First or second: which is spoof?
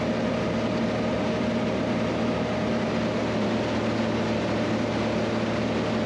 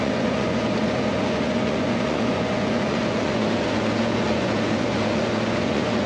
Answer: second